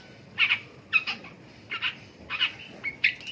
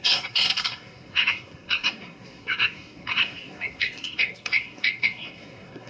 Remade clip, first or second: second